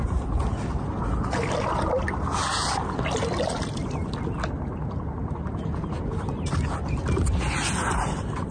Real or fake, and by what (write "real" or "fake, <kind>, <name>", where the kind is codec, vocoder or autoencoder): real